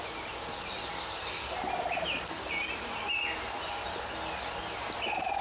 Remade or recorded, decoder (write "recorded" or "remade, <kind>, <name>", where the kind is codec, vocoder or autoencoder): recorded